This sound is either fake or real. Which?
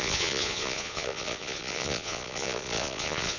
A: fake